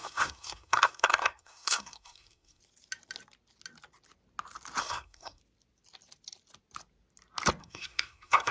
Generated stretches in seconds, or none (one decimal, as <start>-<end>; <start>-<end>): 0.0-2.6; 4.8-5.4; 7.6-8.5